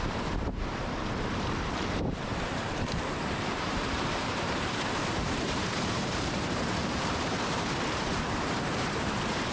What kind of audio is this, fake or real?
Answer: fake